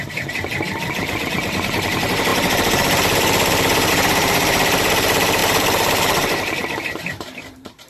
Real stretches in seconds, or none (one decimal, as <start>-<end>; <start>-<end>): none